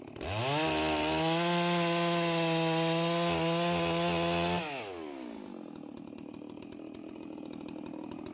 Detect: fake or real real